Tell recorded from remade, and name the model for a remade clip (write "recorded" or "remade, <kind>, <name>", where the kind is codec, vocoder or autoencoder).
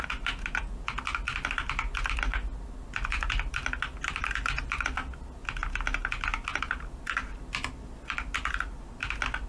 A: recorded